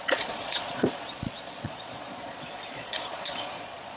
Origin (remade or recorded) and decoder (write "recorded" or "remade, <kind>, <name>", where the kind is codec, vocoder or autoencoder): remade, vocoder, Vocos